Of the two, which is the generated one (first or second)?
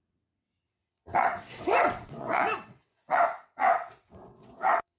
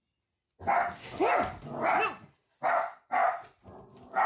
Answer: first